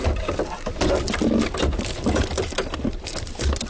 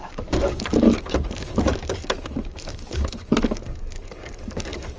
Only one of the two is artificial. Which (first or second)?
second